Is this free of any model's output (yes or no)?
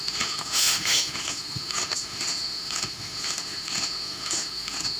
no